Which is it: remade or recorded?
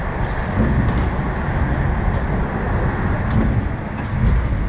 recorded